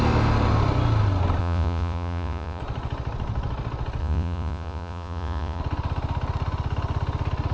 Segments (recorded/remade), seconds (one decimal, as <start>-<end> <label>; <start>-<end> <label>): 0.0-1.4 recorded; 1.4-2.6 remade; 2.6-4.0 recorded; 4.0-5.6 remade; 5.6-7.5 recorded